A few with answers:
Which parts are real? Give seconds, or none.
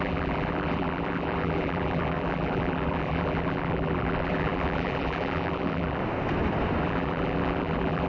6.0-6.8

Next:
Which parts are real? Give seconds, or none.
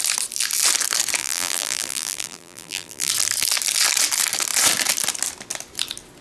0.0-1.2; 3.1-6.2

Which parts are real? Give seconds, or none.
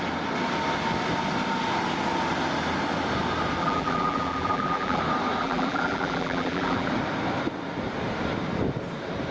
0.0-3.6; 5.0-5.4; 6.9-9.3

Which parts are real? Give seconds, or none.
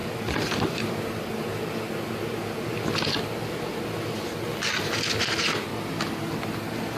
0.9-7.0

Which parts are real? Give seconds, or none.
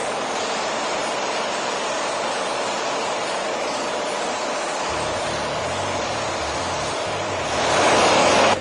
4.7-8.6